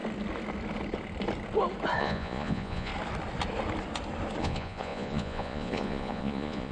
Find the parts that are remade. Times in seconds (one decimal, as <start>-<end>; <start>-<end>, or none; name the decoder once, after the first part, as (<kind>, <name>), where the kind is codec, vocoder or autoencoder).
2.0-2.9 (vocoder, Vocos); 4.4-6.7